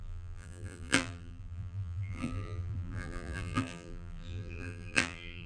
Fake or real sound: fake